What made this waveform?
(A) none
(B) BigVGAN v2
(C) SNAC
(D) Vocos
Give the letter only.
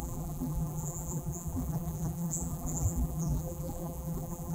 B